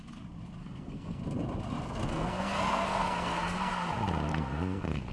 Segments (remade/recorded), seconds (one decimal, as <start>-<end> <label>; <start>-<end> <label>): 0.0-0.6 recorded; 0.6-1.2 remade; 1.2-2.1 recorded; 2.1-3.7 remade; 3.7-4.3 recorded; 4.3-5.1 remade